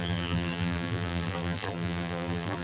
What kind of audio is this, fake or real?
fake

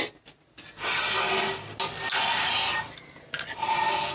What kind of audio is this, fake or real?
real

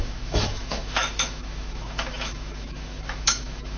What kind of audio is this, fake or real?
fake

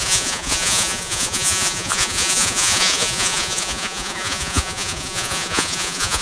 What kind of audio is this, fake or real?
fake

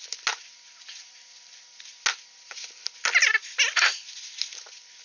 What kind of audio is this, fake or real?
real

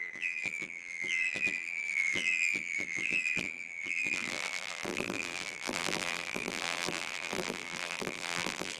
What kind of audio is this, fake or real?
fake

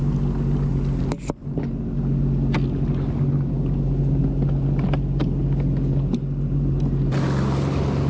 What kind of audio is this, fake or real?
real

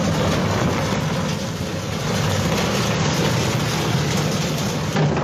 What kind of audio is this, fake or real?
real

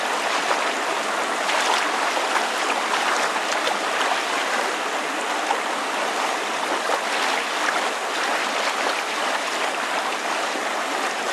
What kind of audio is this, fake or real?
real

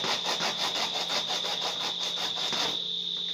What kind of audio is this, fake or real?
real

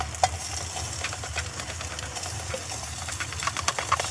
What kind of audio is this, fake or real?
real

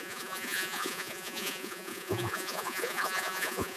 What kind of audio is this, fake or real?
fake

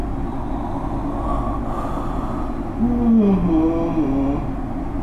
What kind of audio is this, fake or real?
real